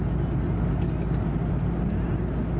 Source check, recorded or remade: recorded